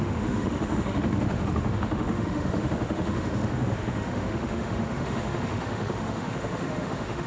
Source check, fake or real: fake